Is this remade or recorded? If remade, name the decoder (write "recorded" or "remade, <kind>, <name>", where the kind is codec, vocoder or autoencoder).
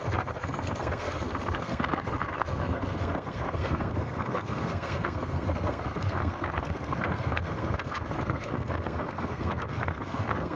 remade, codec, SNAC